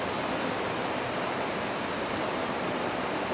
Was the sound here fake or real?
real